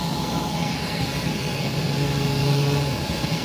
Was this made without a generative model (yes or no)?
no